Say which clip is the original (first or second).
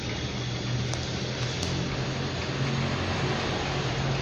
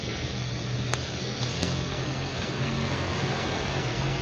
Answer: first